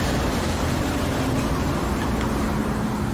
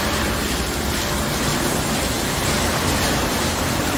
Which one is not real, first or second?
second